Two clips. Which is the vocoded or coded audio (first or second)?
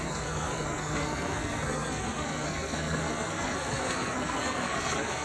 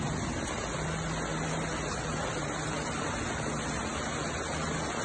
first